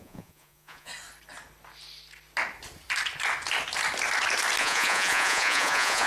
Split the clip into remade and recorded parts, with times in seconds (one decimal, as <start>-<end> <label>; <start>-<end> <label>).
0.0-0.9 remade; 0.9-4.6 recorded; 4.6-6.1 remade